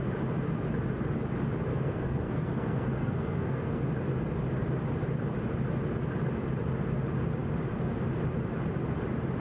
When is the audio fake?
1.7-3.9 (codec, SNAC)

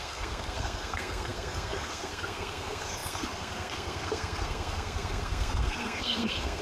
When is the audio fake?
0.0-6.6 (codec, SNAC)

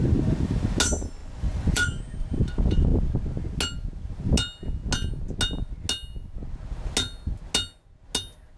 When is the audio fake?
1.2-2.0 (vocoder, Vocos)

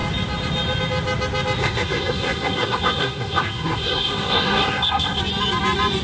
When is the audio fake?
1.6-5.2 (codec, SNAC)

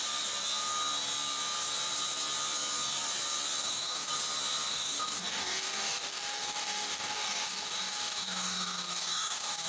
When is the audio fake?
3.6-4.1 (codec, DAC); 4.7-9.7

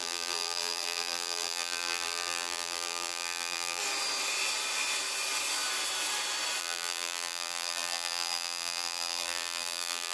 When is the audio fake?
0.0-3.8 (vocoder, BigVGAN v2); 6.6-10.1

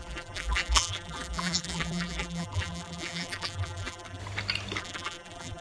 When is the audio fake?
0.0-4.2 (vocoder, BigVGAN v2); 4.8-5.6